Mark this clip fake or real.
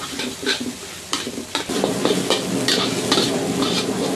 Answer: real